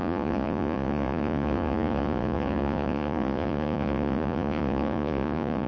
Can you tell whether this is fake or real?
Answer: fake